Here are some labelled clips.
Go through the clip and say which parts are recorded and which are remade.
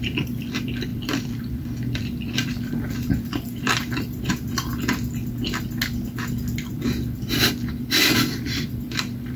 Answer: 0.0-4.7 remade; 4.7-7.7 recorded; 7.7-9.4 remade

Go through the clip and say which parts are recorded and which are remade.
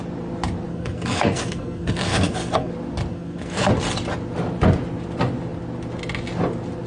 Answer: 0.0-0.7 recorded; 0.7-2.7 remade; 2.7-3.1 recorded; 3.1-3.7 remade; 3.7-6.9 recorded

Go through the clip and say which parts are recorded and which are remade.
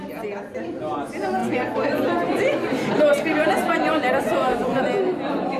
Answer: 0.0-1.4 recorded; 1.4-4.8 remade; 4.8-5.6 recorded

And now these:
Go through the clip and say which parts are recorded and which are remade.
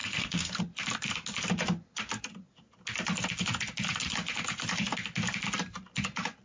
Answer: 0.0-0.6 remade; 0.6-6.4 recorded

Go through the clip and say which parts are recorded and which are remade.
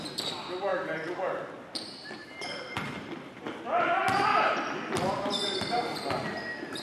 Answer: 0.0-0.7 recorded; 0.7-2.3 remade; 2.3-4.0 recorded; 4.0-6.1 remade; 6.1-6.8 recorded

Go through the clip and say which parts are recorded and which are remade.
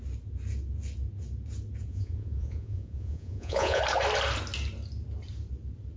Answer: 0.0-1.8 recorded; 1.8-3.8 remade; 3.8-6.0 recorded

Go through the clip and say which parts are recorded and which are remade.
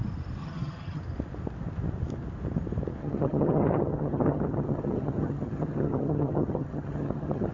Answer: 0.0-0.4 recorded; 0.4-1.0 remade; 1.0-3.0 recorded; 3.0-7.5 remade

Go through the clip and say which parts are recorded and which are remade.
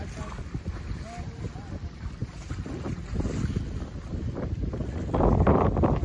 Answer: 0.0-6.0 recorded